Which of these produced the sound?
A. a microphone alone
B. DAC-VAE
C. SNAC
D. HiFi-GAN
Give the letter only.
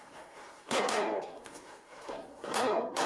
C